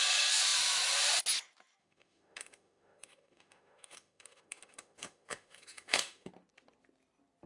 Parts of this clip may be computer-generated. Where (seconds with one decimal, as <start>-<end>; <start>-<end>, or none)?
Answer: 1.8-6.3